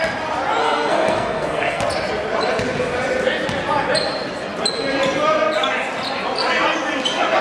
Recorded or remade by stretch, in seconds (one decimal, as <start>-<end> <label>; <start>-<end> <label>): 0.0-0.6 recorded; 0.6-1.8 remade; 1.8-7.4 recorded